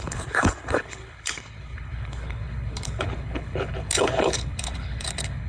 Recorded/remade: remade